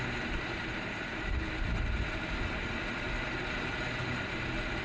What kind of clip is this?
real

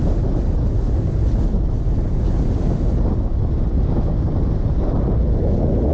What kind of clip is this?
real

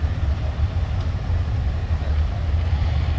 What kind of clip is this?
fake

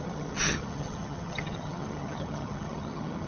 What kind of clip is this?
fake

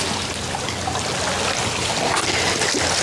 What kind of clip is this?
real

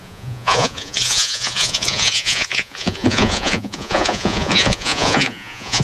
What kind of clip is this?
fake